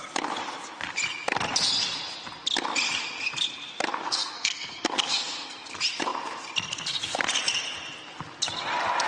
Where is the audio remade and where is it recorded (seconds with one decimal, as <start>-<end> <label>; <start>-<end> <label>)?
0.0-4.0 recorded; 4.0-5.6 remade; 5.6-9.1 recorded